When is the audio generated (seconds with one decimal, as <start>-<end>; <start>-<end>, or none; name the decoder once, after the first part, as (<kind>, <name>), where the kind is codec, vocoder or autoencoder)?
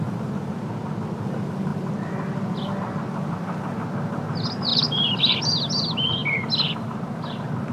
4.7-5.4 (vocoder, BigVGAN v2)